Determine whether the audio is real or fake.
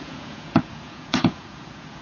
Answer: fake